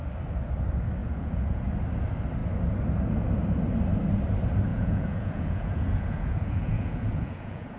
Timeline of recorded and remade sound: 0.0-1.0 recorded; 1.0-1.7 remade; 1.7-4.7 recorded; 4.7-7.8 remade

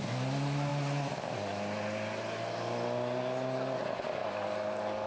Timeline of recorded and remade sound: 0.0-5.1 recorded